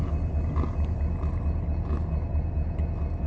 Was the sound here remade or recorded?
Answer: recorded